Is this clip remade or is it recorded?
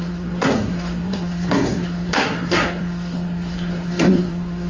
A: remade